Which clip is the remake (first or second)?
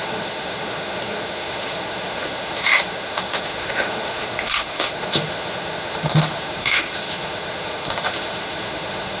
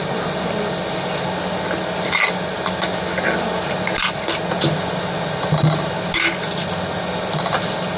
first